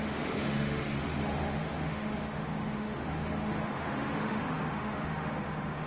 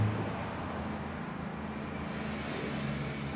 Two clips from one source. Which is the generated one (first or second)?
first